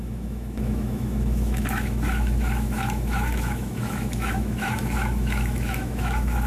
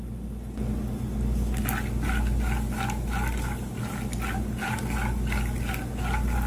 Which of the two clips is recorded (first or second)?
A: second